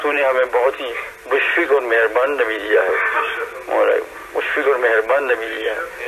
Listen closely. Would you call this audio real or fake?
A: real